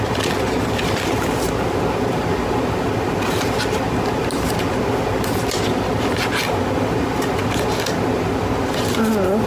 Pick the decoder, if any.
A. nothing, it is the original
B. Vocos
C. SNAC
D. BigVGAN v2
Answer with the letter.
A